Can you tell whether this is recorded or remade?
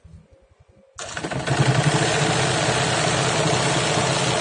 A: recorded